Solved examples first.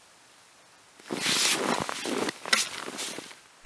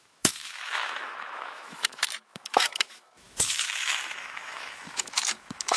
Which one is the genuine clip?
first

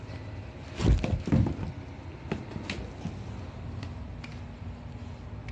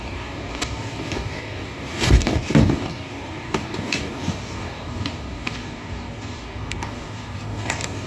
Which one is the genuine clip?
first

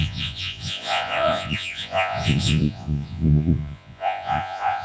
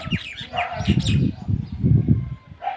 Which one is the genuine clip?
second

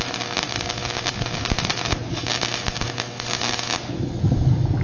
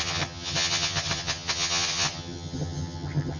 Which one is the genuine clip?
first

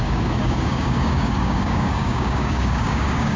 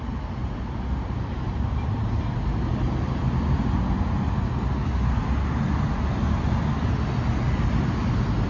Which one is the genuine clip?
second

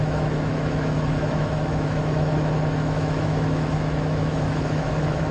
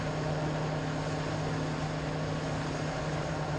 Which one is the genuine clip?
second